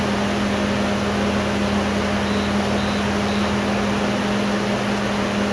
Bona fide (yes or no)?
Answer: yes